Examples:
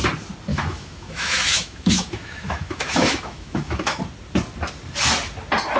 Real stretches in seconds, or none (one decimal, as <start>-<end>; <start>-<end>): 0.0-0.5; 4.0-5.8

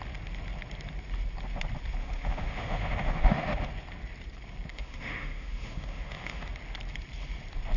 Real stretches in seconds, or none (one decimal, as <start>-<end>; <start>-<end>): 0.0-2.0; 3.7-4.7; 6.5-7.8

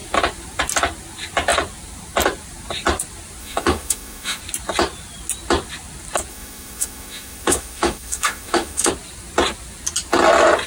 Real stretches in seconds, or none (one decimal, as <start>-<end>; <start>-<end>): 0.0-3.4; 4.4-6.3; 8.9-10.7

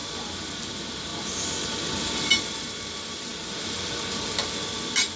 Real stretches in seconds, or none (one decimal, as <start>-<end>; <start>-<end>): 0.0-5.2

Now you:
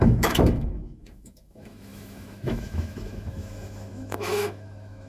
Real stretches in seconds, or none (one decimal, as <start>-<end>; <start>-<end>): none

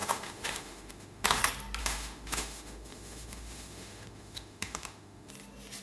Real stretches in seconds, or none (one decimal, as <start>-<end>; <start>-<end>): 1.4-1.8; 5.3-5.8

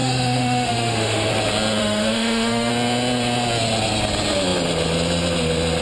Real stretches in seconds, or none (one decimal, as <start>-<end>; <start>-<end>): 1.3-1.8; 2.7-5.8

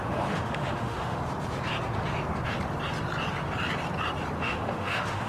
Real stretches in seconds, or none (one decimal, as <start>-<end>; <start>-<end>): 1.2-4.4